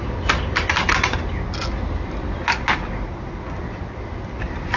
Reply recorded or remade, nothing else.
recorded